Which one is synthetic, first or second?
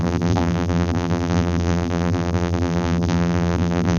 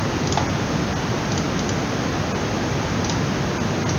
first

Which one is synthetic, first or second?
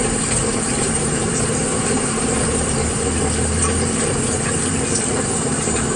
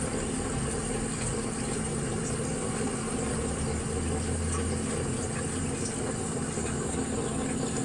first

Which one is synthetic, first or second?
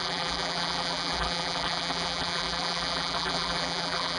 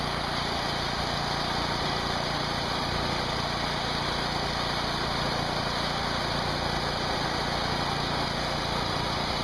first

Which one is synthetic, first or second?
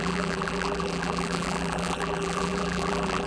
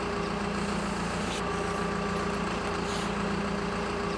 first